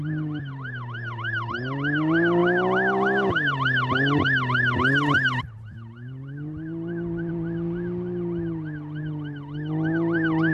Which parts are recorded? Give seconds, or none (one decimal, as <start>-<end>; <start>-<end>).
0.0-10.5